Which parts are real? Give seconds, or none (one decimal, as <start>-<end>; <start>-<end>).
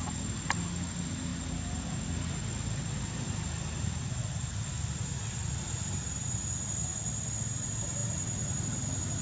0.0-9.2